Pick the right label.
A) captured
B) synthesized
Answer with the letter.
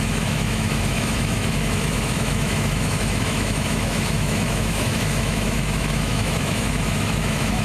B